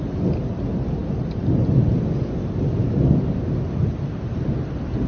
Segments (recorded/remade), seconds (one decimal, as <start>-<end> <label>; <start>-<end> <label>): 0.0-5.1 recorded